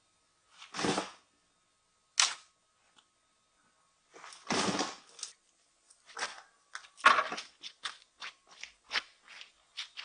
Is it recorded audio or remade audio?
recorded